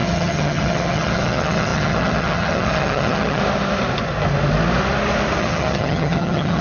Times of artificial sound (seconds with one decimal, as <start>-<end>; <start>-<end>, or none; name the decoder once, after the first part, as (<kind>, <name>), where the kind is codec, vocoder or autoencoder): 0.0-3.4 (vocoder, HiFi-GAN); 5.4-6.6